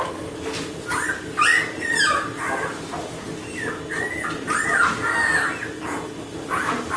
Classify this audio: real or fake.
real